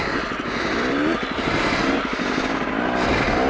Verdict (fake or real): real